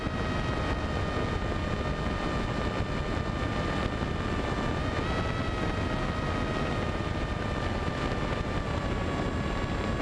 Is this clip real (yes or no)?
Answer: yes